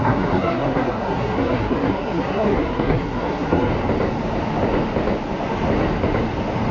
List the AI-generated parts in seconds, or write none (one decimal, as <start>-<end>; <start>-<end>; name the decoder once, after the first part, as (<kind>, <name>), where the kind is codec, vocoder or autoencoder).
0.0-3.7 (codec, SNAC)